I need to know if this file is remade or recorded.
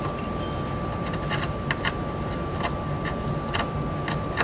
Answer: recorded